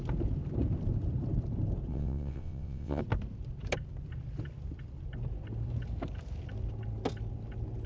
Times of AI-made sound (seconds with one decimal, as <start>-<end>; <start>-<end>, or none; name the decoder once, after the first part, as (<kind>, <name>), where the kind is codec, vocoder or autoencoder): 1.9-3.0 (vocoder, WaveNeXt)